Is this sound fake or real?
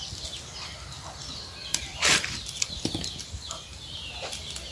real